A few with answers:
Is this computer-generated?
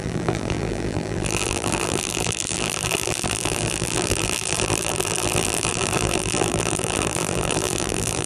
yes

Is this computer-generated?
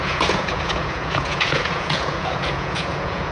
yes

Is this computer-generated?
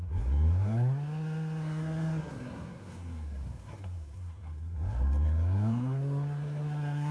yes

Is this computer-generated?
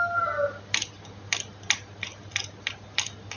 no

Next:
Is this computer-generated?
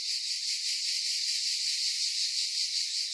no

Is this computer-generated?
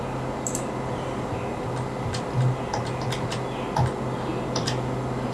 no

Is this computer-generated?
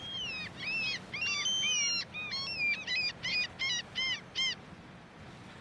no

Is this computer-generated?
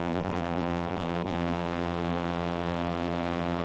yes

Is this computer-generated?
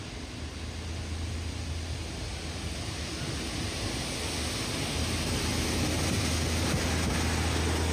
no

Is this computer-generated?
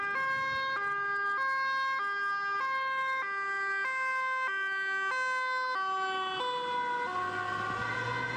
no